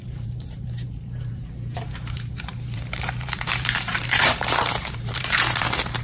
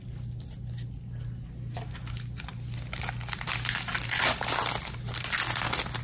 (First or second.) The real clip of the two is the second